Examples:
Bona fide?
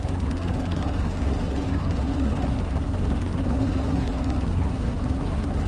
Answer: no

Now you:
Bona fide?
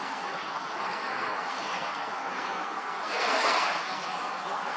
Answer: no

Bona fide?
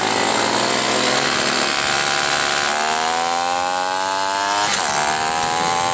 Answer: yes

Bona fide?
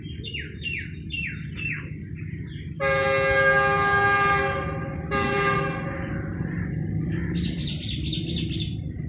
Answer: yes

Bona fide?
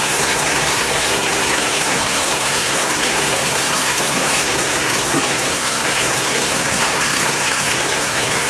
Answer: no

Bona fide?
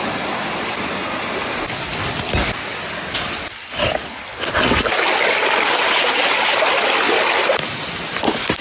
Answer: yes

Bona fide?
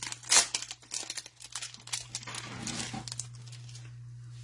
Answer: yes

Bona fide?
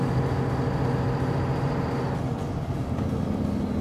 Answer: yes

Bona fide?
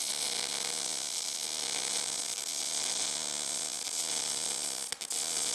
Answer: yes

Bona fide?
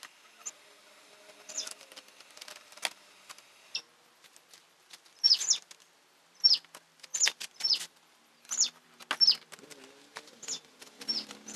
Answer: yes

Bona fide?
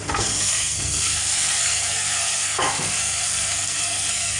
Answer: no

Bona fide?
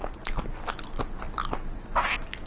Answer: yes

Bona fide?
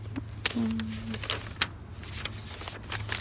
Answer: yes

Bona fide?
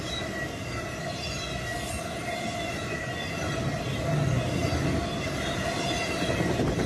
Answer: yes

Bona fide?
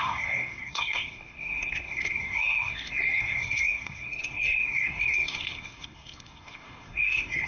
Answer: no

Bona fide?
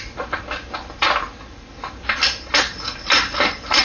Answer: yes